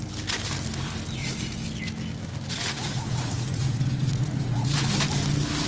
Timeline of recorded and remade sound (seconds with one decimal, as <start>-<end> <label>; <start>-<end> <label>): 0.0-2.5 recorded; 2.5-4.9 remade; 4.9-5.7 recorded